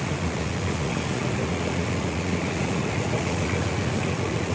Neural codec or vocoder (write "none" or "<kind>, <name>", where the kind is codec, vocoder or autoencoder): vocoder, Vocos